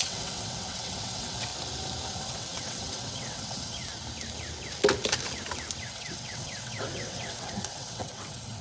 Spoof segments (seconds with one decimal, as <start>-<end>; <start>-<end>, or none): 0.0-1.5; 2.1-3.9; 5.8-8.6